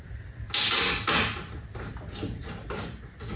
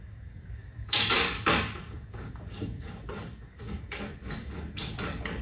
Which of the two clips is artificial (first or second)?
second